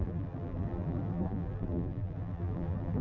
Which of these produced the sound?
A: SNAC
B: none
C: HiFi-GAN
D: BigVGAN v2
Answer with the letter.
D